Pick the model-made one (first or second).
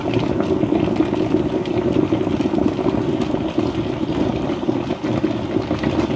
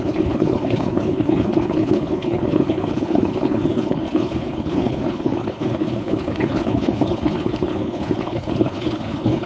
second